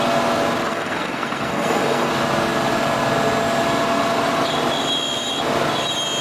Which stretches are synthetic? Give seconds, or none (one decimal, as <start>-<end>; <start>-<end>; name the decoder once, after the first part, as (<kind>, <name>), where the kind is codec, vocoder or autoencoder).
0.7-2.1 (codec, SNAC)